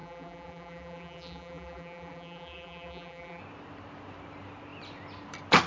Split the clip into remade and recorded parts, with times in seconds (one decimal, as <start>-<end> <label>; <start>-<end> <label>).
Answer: 0.0-3.4 remade; 3.4-5.7 recorded